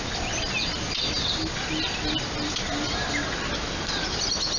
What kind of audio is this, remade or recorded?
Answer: recorded